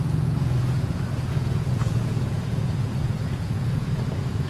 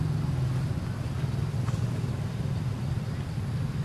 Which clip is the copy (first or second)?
first